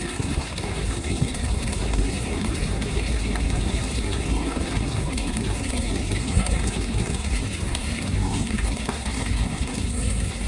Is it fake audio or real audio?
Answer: fake